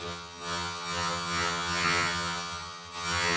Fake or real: fake